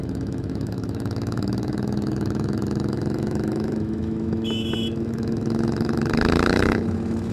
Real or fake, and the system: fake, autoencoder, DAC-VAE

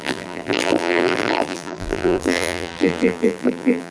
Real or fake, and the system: fake, vocoder, BigVGAN v2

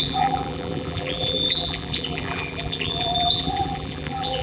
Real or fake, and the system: fake, vocoder, BigVGAN v2